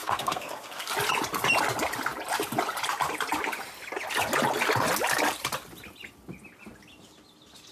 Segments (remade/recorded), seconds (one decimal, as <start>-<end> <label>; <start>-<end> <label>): 0.0-0.9 remade; 0.9-7.7 recorded